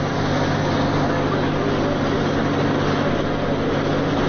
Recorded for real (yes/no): yes